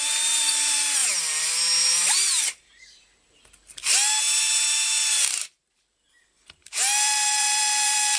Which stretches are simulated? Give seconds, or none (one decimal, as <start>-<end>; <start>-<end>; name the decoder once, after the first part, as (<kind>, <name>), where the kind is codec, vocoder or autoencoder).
0.0-1.0 (vocoder, BigVGAN v2); 1.8-3.1; 5.1-8.2